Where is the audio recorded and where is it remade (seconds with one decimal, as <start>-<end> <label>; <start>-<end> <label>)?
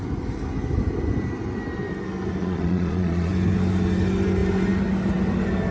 0.0-2.4 recorded; 2.4-3.3 remade; 3.3-5.7 recorded